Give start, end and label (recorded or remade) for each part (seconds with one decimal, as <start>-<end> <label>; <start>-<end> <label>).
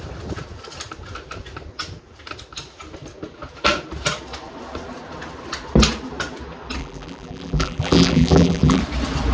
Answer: 0.0-6.8 recorded; 6.8-8.8 remade; 8.8-9.3 recorded